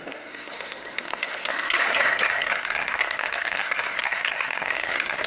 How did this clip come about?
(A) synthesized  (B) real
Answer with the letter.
A